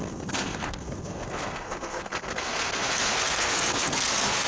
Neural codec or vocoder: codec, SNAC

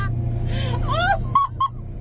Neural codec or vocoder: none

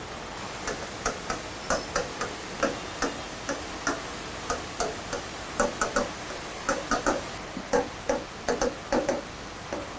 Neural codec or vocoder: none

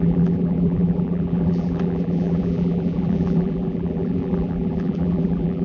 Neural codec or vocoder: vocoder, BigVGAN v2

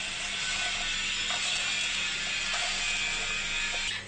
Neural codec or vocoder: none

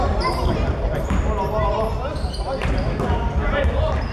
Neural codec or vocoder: none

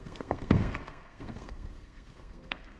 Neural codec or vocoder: codec, SNAC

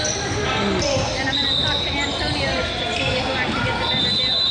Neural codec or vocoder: none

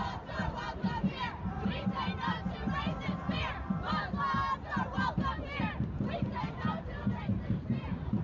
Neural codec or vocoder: vocoder, BigVGAN v2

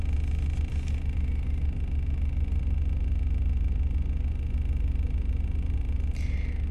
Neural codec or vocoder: none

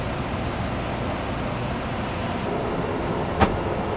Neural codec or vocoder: none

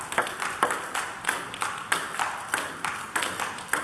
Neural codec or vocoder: none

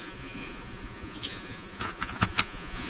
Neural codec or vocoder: vocoder, Vocos